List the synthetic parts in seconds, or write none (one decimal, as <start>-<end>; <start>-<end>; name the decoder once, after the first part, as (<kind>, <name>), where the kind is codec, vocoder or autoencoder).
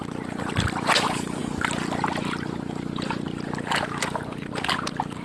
none